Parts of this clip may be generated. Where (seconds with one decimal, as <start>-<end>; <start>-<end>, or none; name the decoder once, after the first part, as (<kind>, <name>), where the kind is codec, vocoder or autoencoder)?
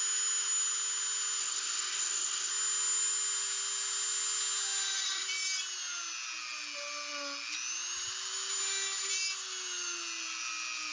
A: 1.4-2.5 (codec, SNAC)